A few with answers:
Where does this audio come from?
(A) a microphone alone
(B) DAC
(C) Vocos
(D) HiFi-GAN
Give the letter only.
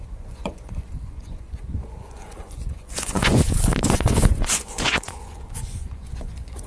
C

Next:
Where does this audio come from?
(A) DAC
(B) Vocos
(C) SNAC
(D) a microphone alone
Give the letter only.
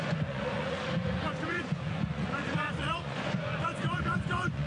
B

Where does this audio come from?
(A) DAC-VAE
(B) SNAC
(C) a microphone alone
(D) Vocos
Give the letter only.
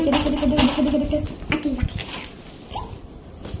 C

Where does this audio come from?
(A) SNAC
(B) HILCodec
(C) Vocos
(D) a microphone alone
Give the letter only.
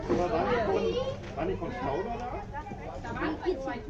D